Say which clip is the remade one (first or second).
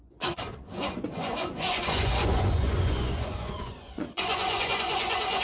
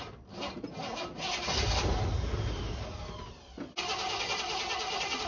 first